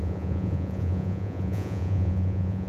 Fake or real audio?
fake